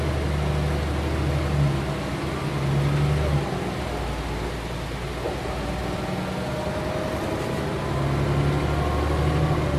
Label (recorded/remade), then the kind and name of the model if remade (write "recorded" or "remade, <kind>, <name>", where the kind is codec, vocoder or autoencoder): recorded